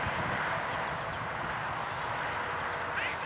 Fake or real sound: real